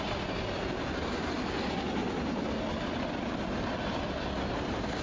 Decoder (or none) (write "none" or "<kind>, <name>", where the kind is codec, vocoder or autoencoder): none